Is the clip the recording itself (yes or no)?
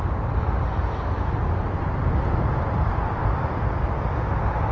yes